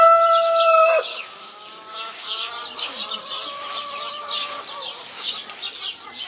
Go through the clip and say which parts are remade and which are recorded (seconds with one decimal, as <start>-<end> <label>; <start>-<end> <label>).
0.0-1.1 recorded; 1.1-2.5 remade; 2.5-6.3 recorded